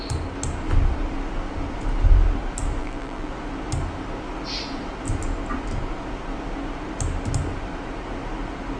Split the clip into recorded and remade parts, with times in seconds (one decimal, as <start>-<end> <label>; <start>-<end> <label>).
0.0-2.8 recorded; 2.8-3.3 remade; 3.3-8.8 recorded

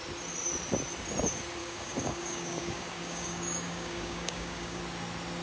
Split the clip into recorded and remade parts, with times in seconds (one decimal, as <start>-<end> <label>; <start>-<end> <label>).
0.0-1.6 recorded; 1.6-4.8 remade; 4.8-5.4 recorded

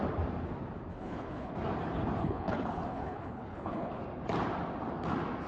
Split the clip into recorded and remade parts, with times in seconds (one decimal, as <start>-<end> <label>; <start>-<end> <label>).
0.0-0.9 recorded; 0.9-1.5 remade; 1.5-2.2 recorded; 2.2-4.0 remade; 4.0-5.5 recorded

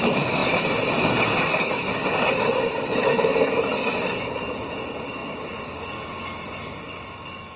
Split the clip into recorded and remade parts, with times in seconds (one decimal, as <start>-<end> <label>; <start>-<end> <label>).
0.0-7.6 remade